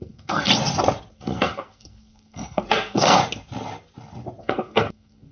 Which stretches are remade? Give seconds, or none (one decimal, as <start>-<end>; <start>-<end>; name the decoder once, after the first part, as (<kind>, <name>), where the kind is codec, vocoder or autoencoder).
0.0-0.5 (codec, SNAC); 1.1-3.2; 4.4-5.3